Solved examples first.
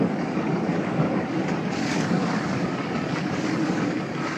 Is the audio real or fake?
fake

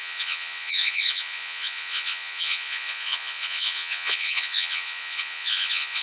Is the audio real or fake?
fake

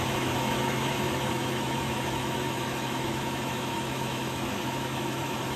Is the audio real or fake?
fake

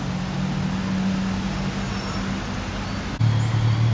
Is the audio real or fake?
real